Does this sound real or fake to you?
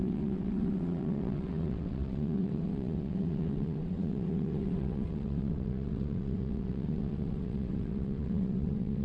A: fake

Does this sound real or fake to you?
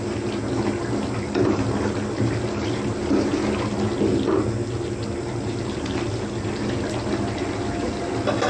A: real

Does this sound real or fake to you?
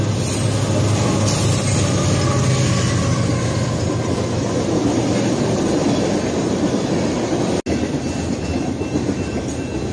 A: real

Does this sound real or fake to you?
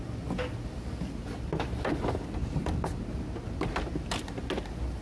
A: real